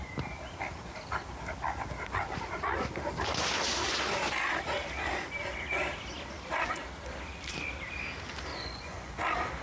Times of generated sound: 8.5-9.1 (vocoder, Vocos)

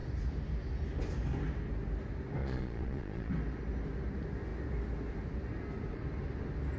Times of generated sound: 2.4-3.3 (vocoder, Vocos)

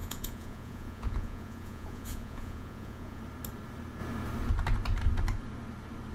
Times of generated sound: 0.0-3.2 (vocoder, Vocos)

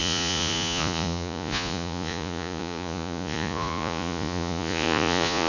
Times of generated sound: 0.0-5.5 (vocoder, Vocos)

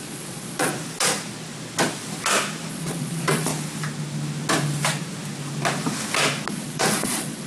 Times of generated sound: 0.0-0.7 (vocoder, Vocos); 2.7-3.5; 6.5-7.5

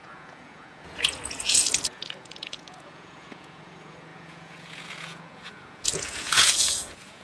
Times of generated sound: 0.0-7.2 (vocoder, Vocos)

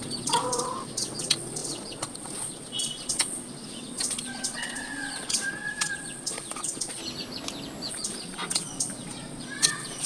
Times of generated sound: 0.0-7.0 (vocoder, Vocos); 7.9-10.1